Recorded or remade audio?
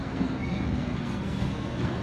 remade